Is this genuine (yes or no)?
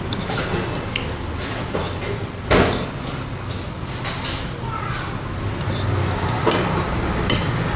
yes